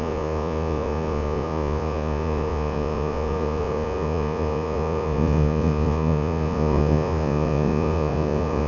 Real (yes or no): no